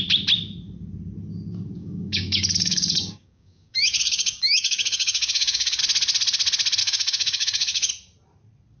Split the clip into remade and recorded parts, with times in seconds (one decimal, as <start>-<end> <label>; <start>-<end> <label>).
0.0-1.8 recorded; 1.8-5.8 remade; 5.8-6.8 recorded; 6.8-7.9 remade; 7.9-8.8 recorded